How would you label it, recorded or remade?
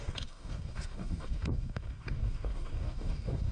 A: remade